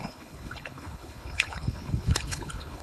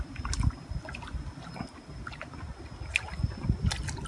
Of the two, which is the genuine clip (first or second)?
second